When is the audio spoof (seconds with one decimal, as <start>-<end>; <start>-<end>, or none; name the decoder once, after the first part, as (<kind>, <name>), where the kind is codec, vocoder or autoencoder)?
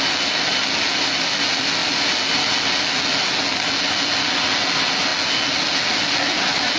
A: none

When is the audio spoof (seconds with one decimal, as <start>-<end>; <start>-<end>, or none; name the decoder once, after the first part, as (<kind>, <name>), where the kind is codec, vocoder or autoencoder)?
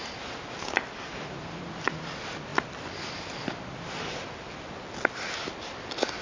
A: none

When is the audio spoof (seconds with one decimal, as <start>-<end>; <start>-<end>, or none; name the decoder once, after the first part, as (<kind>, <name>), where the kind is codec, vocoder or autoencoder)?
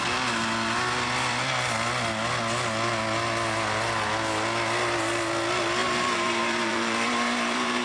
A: 5.8-7.8 (vocoder, BigVGAN v2)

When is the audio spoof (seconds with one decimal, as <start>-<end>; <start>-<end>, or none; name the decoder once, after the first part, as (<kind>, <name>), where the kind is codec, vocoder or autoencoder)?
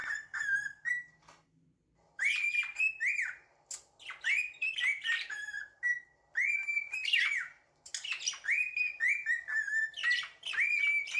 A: none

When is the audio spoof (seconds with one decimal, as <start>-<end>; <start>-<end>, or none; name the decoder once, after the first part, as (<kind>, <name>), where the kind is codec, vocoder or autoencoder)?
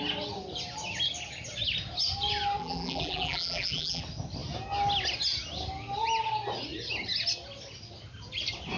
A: 2.6-4.0 (vocoder, BigVGAN v2)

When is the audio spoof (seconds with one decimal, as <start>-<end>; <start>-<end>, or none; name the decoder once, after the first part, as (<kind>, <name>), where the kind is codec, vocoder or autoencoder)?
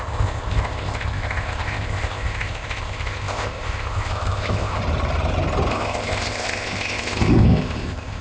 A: 0.0-4.8 (codec, ZipCodec); 5.7-8.2